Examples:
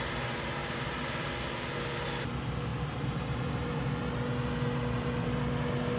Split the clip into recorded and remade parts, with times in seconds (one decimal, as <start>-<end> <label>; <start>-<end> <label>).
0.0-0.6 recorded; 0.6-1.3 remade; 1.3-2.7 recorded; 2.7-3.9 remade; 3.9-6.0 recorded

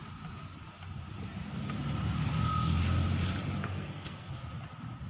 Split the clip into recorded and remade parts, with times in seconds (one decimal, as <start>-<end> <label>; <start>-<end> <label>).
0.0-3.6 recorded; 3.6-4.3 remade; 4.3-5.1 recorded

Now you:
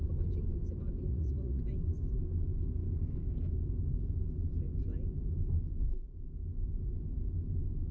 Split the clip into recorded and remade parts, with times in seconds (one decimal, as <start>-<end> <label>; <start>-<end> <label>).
0.0-1.1 recorded; 1.1-1.6 remade; 1.6-7.9 recorded

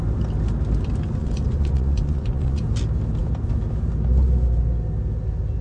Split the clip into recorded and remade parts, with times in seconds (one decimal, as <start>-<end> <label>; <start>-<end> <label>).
0.0-1.2 recorded; 1.2-2.6 remade; 2.6-5.6 recorded